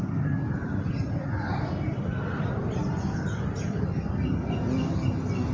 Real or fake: real